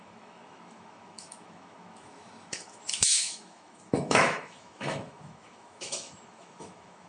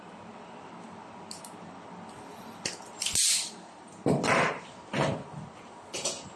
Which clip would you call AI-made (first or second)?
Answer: first